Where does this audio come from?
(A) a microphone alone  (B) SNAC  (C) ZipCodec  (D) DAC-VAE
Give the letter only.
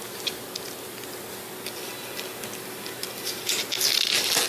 A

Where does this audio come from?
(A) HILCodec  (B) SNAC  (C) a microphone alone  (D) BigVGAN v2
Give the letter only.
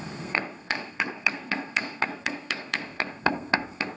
B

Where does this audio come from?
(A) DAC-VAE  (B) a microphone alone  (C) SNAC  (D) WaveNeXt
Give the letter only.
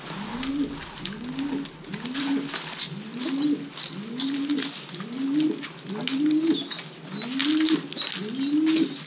B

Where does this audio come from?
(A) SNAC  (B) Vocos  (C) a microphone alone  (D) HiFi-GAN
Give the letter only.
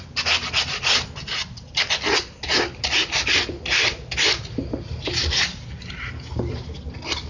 C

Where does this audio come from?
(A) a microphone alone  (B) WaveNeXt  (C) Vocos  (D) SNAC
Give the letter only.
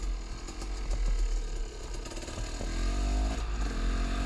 A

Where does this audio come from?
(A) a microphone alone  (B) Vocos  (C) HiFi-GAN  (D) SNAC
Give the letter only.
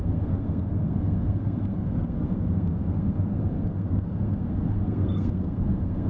D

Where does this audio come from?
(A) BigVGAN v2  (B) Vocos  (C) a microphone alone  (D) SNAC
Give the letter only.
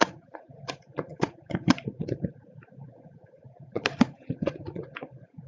B